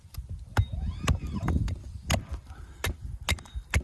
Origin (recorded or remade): recorded